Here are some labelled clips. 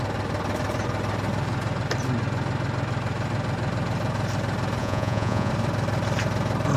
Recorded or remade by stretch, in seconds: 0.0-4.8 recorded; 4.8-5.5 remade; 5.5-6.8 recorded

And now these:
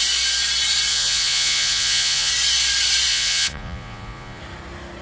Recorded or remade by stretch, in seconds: 0.0-0.9 recorded; 0.9-2.3 remade; 2.3-3.1 recorded; 3.1-4.4 remade; 4.4-5.0 recorded

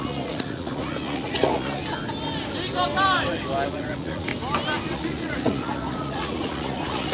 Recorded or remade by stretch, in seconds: 0.0-1.8 remade; 1.8-3.7 recorded; 3.7-4.3 remade; 4.3-4.9 recorded; 4.9-7.1 remade